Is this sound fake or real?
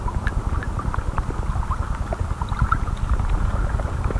real